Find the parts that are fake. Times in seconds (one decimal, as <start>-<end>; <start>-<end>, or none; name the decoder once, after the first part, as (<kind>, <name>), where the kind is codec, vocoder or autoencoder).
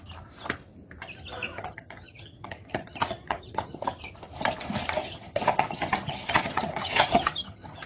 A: 1.5-4.0 (vocoder, HiFi-GAN); 5.0-7.9